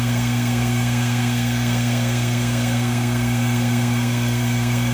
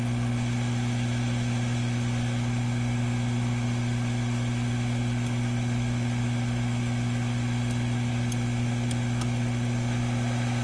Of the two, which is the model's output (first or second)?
first